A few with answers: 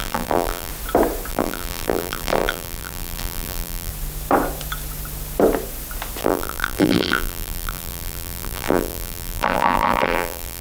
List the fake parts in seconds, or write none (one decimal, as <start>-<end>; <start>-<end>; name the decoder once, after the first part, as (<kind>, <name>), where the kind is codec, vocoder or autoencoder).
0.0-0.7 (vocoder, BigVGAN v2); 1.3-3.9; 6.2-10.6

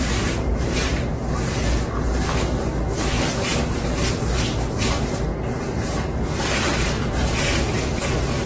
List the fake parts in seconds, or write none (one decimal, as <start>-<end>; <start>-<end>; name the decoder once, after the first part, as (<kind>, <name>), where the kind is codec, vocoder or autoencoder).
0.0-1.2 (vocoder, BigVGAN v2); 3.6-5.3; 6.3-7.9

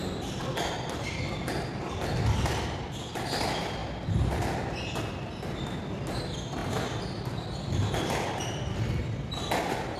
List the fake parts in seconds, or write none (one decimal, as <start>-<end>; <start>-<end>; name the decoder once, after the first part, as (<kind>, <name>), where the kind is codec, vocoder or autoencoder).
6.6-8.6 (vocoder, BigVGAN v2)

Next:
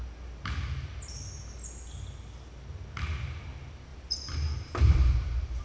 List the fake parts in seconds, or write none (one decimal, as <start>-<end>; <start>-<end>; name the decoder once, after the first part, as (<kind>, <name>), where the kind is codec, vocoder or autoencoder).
3.9-5.6 (vocoder, BigVGAN v2)

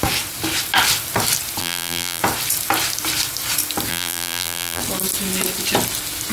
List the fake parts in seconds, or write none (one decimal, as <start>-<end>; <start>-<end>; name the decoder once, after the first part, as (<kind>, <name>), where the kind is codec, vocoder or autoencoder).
1.6-2.2 (vocoder, BigVGAN v2); 3.9-4.8